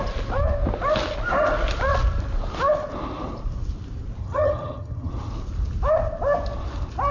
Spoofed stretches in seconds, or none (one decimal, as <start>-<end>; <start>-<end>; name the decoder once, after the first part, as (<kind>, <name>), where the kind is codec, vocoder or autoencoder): 4.2-5.1 (vocoder, HiFi-GAN)